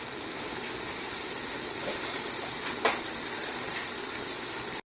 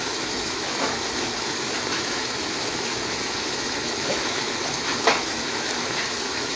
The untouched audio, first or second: first